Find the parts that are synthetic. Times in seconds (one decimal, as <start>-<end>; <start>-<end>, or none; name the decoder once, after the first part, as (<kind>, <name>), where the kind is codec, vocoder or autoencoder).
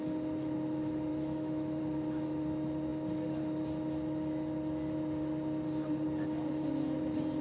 1.1-1.8 (autoencoder, DAC-VAE)